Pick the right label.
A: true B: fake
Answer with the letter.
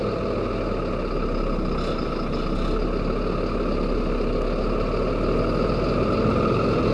A